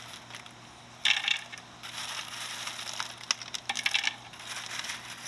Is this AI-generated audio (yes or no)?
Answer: no